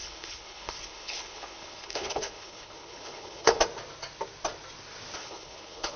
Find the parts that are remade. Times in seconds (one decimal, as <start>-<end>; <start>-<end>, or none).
0.0-3.6; 5.2-6.0